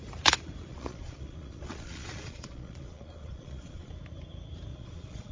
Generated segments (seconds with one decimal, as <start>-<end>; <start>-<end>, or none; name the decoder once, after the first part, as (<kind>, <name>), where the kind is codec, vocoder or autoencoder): 0.7-3.9 (vocoder, Vocos); 4.7-5.3